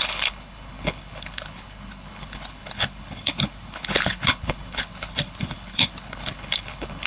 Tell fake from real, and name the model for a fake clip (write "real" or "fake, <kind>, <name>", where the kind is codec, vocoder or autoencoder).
fake, codec, HILCodec